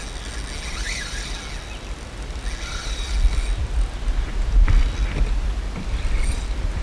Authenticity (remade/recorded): recorded